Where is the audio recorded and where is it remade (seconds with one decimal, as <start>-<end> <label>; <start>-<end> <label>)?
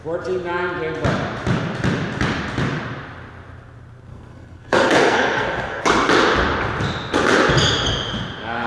0.0-4.1 recorded; 4.1-5.8 remade; 5.8-8.7 recorded